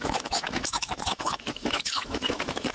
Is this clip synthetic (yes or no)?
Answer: yes